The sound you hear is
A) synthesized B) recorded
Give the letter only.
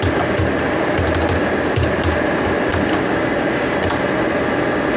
B